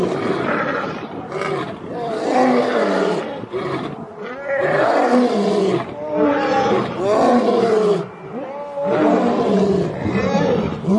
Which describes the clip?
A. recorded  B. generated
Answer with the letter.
A